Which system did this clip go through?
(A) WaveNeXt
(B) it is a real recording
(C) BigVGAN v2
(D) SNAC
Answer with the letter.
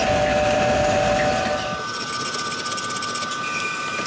B